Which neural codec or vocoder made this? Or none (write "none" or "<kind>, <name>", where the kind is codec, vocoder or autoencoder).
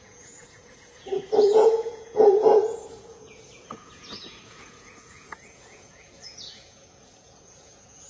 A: vocoder, Vocos